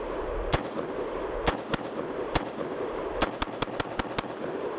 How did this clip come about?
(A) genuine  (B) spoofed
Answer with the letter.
A